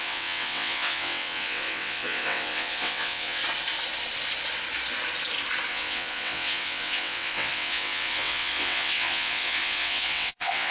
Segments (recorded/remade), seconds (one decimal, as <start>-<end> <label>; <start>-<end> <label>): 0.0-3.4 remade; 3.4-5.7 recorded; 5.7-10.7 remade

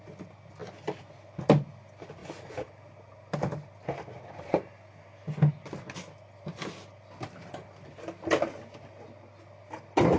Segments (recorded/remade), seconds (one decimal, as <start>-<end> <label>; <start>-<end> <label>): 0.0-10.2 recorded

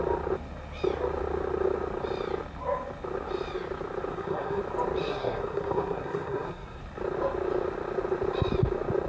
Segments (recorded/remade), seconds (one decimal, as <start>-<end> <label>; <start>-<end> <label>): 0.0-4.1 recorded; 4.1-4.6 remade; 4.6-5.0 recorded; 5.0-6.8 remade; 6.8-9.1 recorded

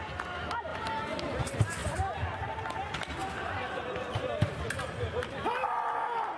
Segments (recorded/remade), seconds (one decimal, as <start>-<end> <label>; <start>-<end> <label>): 0.0-0.7 recorded; 0.7-1.4 remade; 1.4-3.2 recorded; 3.2-5.7 remade; 5.7-6.4 recorded

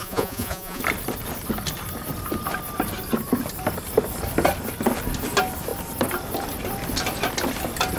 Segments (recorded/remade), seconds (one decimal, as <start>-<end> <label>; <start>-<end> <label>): 0.0-0.8 remade; 0.8-8.0 recorded

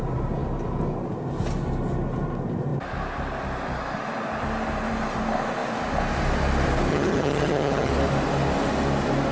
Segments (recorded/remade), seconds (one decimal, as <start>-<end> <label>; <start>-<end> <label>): 0.0-6.9 recorded; 6.9-7.9 remade; 7.9-9.3 recorded

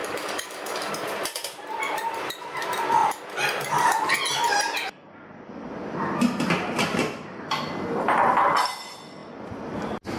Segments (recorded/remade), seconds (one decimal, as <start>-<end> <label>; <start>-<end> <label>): 0.0-0.9 remade; 0.9-10.2 recorded